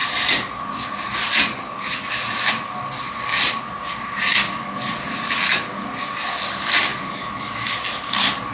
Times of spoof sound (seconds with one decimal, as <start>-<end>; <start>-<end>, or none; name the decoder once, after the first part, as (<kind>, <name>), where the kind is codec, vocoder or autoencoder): none

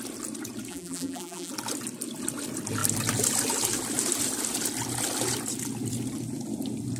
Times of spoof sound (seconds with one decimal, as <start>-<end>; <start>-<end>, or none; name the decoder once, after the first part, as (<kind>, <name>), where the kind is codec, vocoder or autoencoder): 0.7-1.5 (vocoder, BigVGAN v2)

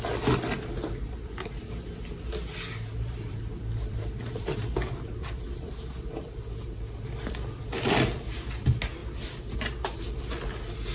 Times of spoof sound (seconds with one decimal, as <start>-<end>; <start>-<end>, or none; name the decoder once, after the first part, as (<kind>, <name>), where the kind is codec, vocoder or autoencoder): 2.9-6.4 (vocoder, BigVGAN v2)

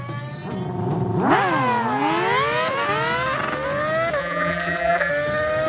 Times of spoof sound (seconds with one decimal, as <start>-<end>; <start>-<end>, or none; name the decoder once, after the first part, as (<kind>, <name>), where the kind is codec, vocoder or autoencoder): 4.2-5.1 (vocoder, BigVGAN v2)